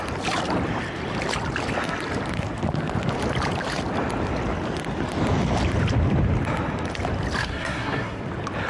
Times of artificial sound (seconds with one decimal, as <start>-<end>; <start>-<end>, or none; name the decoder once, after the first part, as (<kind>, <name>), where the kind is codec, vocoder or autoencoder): 7.4-8.2 (codec, SNAC)